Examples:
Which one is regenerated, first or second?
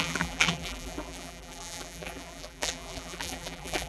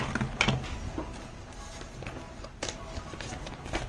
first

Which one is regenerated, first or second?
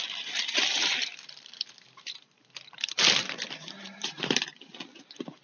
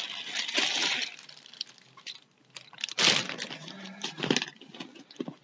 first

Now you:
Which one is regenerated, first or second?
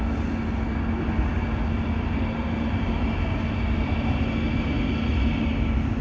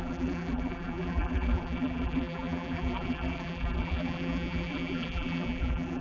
second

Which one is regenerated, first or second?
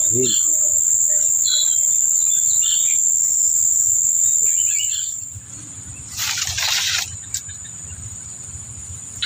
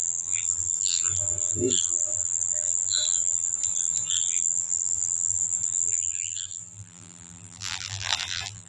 second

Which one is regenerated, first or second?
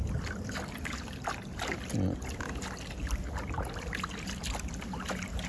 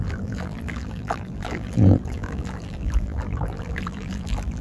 second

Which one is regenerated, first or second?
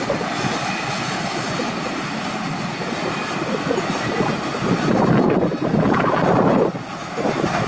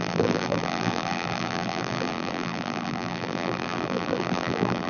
second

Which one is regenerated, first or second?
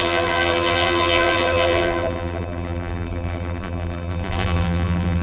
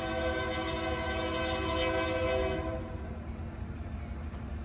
first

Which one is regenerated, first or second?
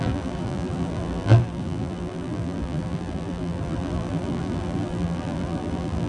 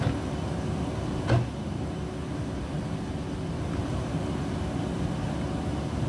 first